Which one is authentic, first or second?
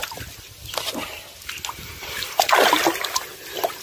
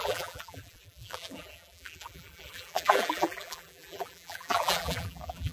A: first